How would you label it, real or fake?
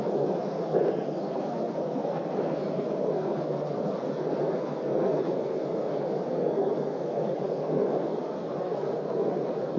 fake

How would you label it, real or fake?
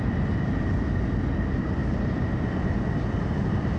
real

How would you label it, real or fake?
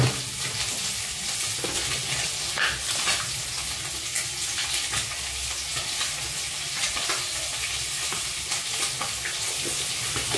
real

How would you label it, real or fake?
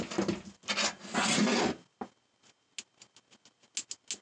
real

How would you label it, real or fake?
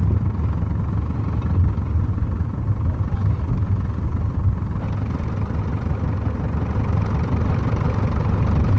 real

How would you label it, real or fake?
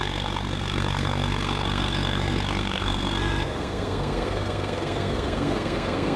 fake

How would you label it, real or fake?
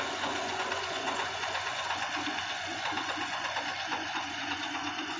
fake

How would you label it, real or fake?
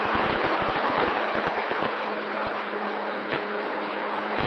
fake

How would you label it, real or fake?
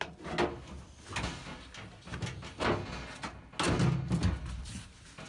real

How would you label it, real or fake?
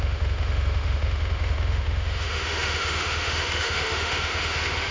fake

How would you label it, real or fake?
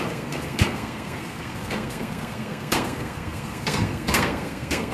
fake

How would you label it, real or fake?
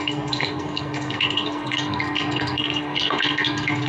fake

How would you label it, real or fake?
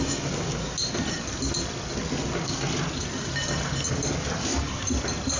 real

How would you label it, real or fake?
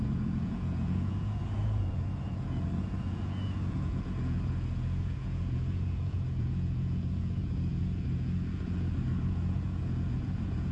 fake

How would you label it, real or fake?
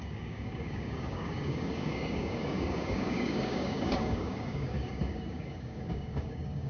fake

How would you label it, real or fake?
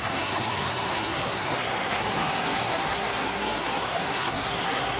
fake